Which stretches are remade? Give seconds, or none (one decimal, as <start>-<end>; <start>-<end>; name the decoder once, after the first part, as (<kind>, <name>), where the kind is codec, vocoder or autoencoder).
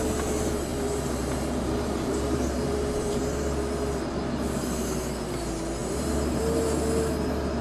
0.7-3.2 (vocoder, BigVGAN v2); 5.8-6.4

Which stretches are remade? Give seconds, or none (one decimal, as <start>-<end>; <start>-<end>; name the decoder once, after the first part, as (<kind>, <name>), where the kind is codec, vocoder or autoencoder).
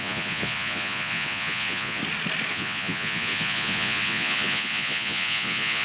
0.0-2.0 (vocoder, Vocos); 2.5-5.8